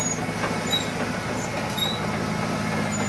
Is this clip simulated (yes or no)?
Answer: no